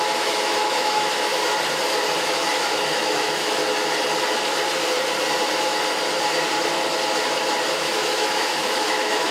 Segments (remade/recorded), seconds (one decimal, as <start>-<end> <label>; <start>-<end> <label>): 0.0-1.3 remade; 1.3-2.2 recorded; 2.2-3.6 remade; 3.6-7.8 recorded; 7.8-9.3 remade